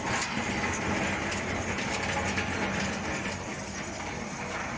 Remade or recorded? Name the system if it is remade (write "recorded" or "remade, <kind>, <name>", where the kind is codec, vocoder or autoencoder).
recorded